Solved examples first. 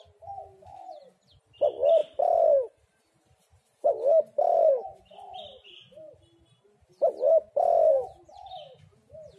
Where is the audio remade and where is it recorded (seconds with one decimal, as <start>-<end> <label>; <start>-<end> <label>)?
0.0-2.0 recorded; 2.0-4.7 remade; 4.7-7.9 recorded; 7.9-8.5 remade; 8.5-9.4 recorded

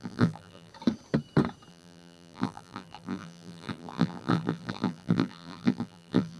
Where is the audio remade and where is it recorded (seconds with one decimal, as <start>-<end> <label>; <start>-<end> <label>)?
0.0-0.7 remade; 0.7-1.7 recorded; 1.7-6.4 remade

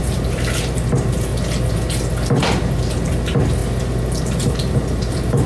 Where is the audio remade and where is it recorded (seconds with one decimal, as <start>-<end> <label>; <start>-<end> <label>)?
0.0-1.3 remade; 1.3-3.1 recorded; 3.1-3.6 remade; 3.6-4.2 recorded; 4.2-5.5 remade

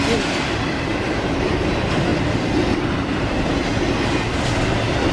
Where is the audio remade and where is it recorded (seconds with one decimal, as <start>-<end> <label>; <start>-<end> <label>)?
0.0-2.1 recorded; 2.1-3.7 remade; 3.7-5.1 recorded

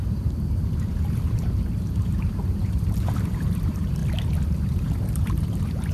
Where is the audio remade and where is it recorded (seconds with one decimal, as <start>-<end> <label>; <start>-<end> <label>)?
0.0-4.0 remade; 4.0-4.5 recorded; 4.5-5.9 remade